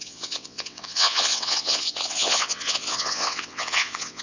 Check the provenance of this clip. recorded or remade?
remade